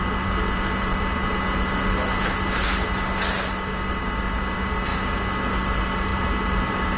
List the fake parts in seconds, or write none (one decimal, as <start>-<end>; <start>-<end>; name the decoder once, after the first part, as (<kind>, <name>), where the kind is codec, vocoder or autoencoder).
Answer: none